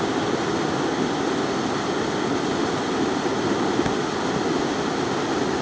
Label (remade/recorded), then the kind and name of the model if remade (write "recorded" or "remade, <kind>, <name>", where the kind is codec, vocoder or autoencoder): recorded